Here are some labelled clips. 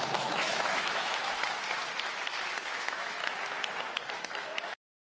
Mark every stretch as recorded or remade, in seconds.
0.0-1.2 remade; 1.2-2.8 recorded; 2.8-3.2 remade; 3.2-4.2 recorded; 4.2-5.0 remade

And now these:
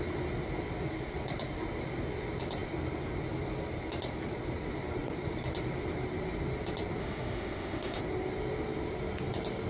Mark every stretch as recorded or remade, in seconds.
0.0-7.0 recorded; 7.0-8.0 remade; 8.0-9.7 recorded

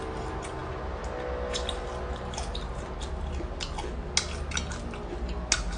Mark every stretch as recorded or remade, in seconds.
0.0-5.8 recorded

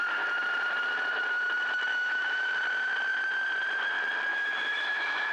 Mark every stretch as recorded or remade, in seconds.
0.0-1.9 recorded; 1.9-2.5 remade; 2.5-4.3 recorded; 4.3-5.3 remade

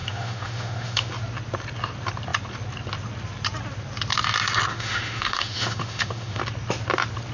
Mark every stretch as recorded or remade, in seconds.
0.0-1.1 remade; 1.1-4.7 recorded; 4.7-6.4 remade; 6.4-7.3 recorded

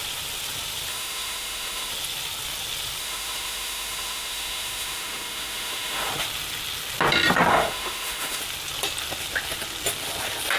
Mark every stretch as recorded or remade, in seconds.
0.0-0.9 recorded; 0.9-1.9 remade; 1.9-3.0 recorded; 3.0-6.1 remade; 6.1-7.5 recorded; 7.5-8.4 remade; 8.4-10.6 recorded

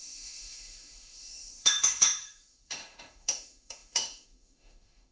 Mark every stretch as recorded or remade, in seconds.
0.0-5.1 remade

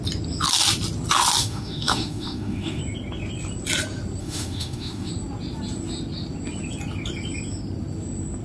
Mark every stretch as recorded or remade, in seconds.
0.0-1.4 recorded; 1.4-2.8 remade; 2.8-4.2 recorded; 4.2-5.1 remade; 5.1-8.4 recorded